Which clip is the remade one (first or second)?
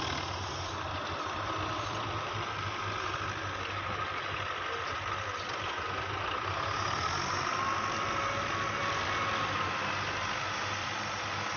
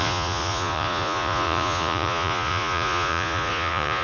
second